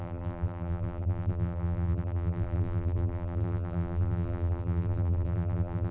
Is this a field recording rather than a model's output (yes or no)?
no